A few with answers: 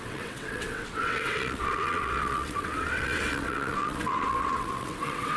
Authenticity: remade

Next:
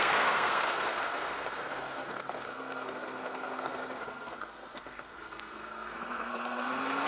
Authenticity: remade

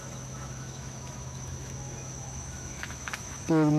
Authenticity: remade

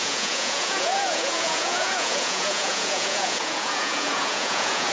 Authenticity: remade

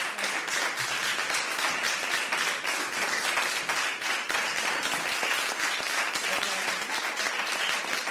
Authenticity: recorded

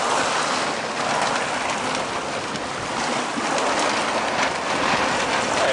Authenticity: recorded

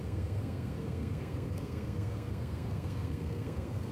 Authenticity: remade